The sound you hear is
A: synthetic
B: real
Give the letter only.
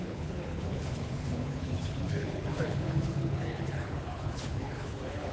A